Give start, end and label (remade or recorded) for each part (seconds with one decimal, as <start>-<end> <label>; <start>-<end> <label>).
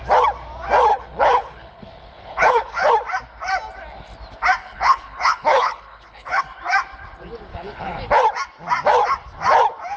0.0-0.9 recorded; 0.9-2.9 remade; 2.9-4.6 recorded; 4.6-6.4 remade; 6.4-7.5 recorded; 7.5-8.0 remade; 8.0-10.0 recorded